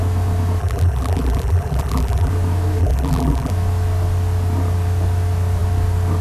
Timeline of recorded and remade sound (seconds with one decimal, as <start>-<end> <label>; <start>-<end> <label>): 0.0-0.6 recorded; 0.6-2.3 remade; 2.3-2.8 recorded; 2.8-3.5 remade; 3.5-6.2 recorded